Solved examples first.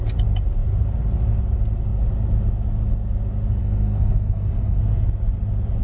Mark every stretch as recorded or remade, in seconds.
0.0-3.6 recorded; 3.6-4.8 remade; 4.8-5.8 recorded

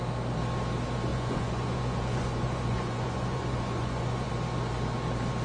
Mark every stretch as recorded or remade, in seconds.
0.0-1.1 recorded; 1.1-4.3 remade; 4.3-5.4 recorded